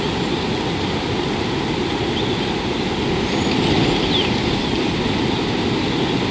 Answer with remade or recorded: recorded